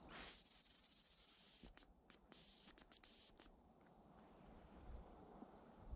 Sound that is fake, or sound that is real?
fake